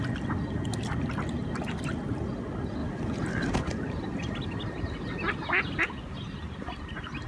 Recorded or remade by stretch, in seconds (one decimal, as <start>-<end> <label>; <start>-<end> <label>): 0.0-7.3 recorded